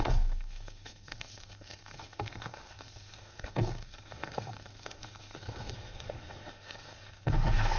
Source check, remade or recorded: remade